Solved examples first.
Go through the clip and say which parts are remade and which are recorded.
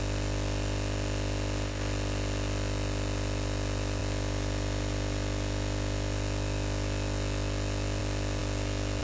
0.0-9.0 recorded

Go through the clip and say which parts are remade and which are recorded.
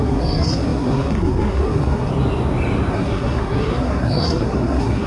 0.0-2.1 remade; 2.1-2.9 recorded; 2.9-5.1 remade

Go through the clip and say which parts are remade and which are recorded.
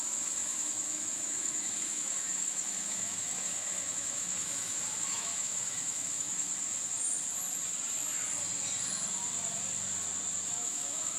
0.0-6.5 remade; 6.5-10.5 recorded; 10.5-11.2 remade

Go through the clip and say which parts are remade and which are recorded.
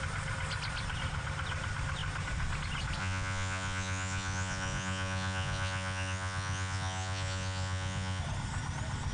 0.0-3.0 recorded; 3.0-8.2 remade; 8.2-9.1 recorded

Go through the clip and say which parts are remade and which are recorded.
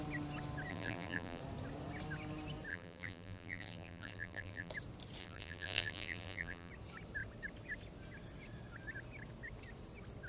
0.0-0.7 recorded; 0.7-1.4 remade; 1.4-2.7 recorded; 2.7-4.7 remade; 4.7-5.2 recorded; 5.2-6.7 remade; 6.7-10.3 recorded